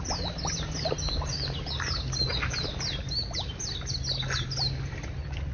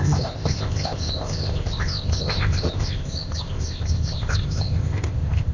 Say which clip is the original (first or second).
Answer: first